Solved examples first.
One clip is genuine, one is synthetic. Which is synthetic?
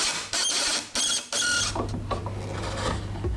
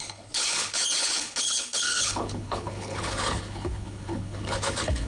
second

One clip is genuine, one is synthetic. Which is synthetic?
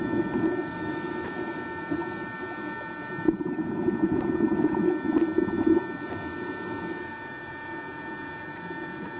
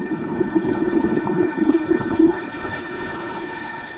second